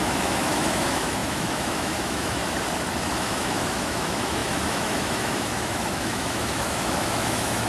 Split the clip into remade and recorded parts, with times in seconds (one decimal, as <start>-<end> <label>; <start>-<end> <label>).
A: 0.0-2.4 remade; 2.4-3.0 recorded; 3.0-7.7 remade